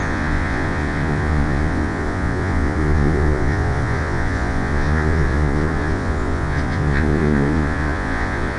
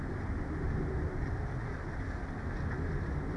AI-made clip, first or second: first